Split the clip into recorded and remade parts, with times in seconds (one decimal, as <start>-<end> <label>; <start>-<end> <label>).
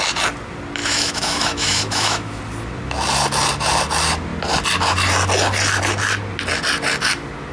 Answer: 0.0-0.8 recorded; 0.8-2.4 remade; 2.4-7.5 recorded